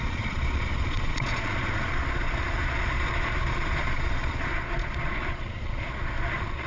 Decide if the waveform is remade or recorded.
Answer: remade